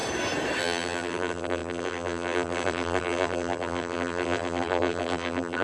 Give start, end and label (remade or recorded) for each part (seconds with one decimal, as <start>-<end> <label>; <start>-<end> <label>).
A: 0.0-0.6 recorded; 0.6-5.6 remade